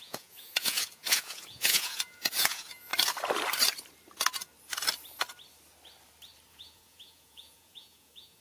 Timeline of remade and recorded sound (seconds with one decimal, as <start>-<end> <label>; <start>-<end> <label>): 0.0-2.9 remade; 2.9-6.5 recorded; 6.5-8.4 remade